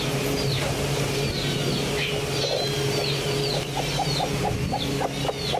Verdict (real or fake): real